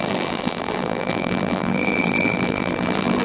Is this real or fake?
fake